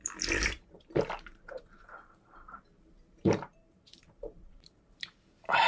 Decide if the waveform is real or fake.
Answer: fake